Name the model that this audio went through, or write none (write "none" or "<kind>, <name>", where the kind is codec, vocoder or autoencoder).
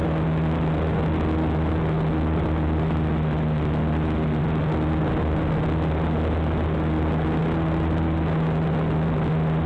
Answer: none